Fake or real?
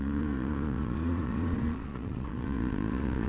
fake